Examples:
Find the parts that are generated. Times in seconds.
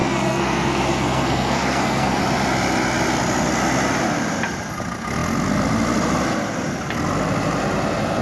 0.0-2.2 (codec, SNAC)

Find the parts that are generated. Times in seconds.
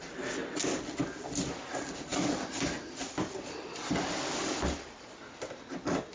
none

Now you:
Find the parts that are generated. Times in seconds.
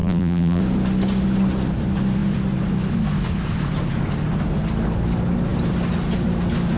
0.0-0.6 (vocoder, BigVGAN v2)